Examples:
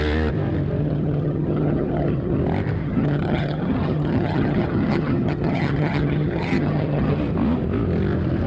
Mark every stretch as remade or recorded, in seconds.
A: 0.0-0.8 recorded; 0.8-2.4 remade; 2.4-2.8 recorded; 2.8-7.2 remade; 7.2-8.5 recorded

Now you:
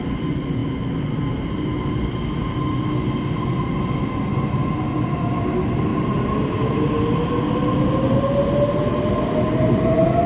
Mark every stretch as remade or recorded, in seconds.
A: 0.0-10.3 recorded

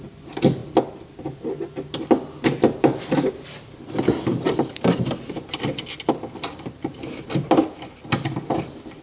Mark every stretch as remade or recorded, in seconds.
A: 0.0-9.0 recorded

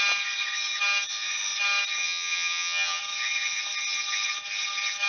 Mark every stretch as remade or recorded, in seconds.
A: 0.0-2.0 recorded; 2.0-3.0 remade; 3.0-5.1 recorded

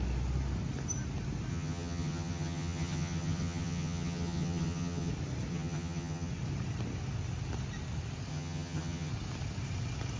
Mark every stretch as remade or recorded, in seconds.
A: 0.0-1.5 recorded; 1.5-5.1 remade; 5.1-5.5 recorded; 5.5-6.3 remade; 6.3-8.3 recorded; 8.3-9.1 remade; 9.1-10.2 recorded